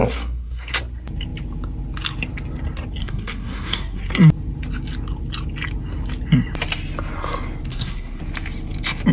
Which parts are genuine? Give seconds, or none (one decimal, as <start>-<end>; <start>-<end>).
0.8-3.0; 4.1-7.7; 8.2-9.1